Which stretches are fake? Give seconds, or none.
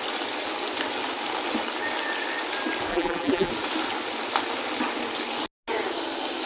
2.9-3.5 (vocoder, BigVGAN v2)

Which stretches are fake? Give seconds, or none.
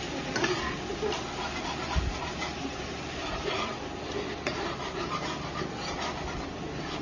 2.5-3.8 (vocoder, BigVGAN v2); 4.5-5.2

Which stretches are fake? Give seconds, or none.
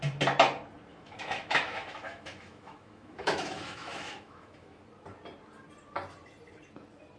0.9-4.8 (autoencoder, DAC-VAE)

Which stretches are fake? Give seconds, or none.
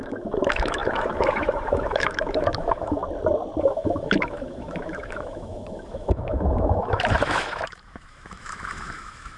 0.0-3.0 (autoencoder, DAC-VAE); 3.6-9.4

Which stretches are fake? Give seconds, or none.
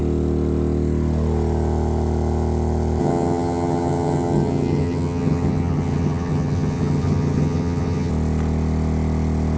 3.0-8.1 (vocoder, HiFi-GAN)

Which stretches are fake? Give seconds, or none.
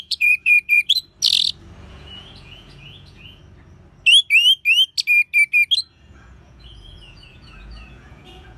0.0-1.0 (vocoder, Vocos); 1.9-3.4; 5.9-8.6